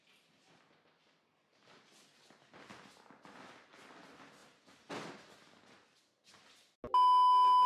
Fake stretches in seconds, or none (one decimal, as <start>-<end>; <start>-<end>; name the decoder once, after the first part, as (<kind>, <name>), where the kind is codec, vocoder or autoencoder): none